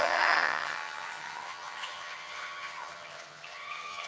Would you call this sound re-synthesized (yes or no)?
yes